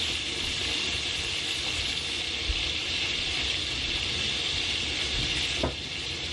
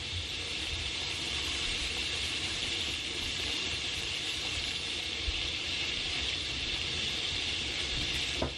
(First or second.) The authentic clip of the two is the first